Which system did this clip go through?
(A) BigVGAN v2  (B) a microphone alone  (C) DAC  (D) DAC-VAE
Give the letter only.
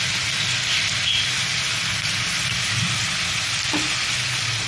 B